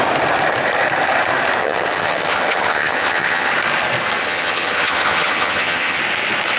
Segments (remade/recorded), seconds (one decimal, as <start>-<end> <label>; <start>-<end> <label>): 0.0-1.6 recorded; 1.6-3.5 remade; 3.5-4.2 recorded; 4.2-6.0 remade; 6.0-6.6 recorded